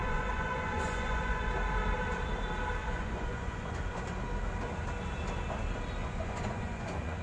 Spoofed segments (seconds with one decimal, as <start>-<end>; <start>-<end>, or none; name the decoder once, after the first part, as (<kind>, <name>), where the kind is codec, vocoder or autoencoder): 0.0-1.5 (vocoder, Vocos); 2.8-4.0; 6.0-7.2